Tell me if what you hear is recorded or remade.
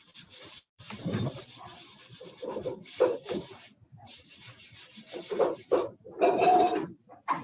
remade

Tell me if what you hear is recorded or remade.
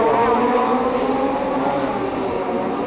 remade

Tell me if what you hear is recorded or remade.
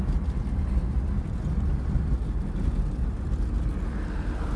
recorded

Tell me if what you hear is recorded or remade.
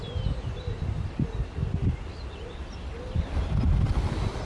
recorded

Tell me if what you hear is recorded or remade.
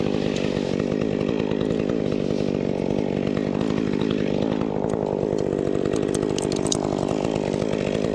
recorded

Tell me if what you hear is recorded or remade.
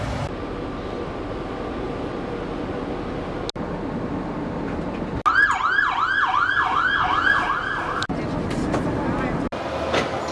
recorded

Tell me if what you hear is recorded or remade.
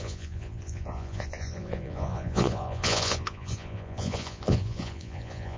remade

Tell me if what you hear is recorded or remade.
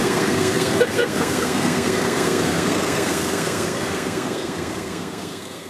remade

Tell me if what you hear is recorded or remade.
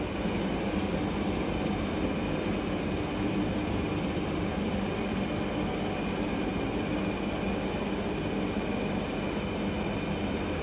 recorded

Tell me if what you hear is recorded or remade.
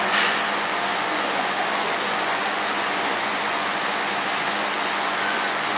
remade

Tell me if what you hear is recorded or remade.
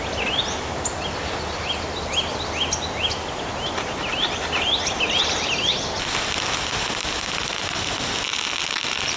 recorded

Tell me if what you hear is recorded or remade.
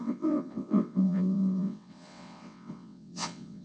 remade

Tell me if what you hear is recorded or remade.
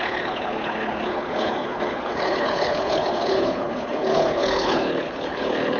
remade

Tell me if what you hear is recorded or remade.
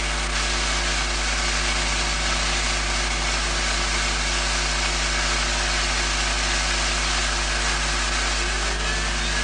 recorded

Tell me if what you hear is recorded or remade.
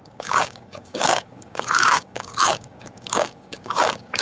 remade